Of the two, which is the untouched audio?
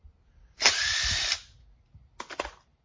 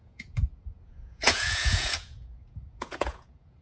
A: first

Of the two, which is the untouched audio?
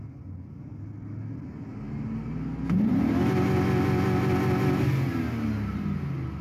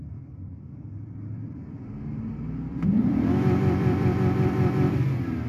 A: first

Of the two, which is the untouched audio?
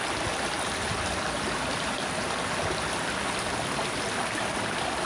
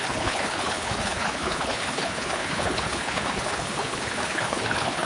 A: first